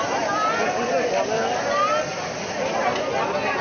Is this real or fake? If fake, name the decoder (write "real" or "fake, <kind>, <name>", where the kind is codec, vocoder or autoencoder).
real